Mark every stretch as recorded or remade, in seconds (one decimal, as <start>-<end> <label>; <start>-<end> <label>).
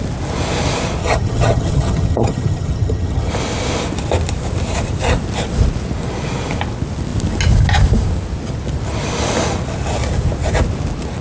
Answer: 0.0-1.0 recorded; 1.0-3.3 remade; 3.3-11.2 recorded